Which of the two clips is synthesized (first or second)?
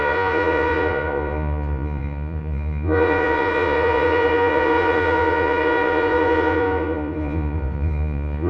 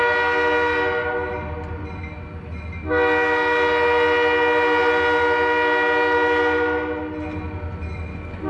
first